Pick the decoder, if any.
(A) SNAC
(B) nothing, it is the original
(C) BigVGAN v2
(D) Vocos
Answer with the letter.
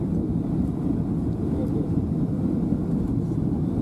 B